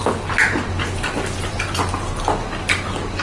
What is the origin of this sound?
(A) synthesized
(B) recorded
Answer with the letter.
B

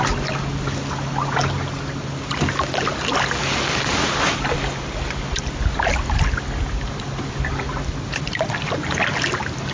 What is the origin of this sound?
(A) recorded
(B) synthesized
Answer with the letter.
A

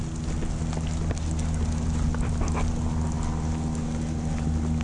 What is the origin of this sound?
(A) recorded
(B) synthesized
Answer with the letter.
A